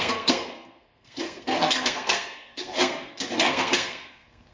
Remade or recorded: remade